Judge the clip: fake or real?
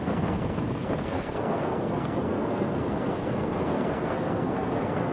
fake